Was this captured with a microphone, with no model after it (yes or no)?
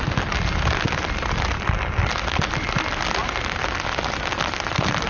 yes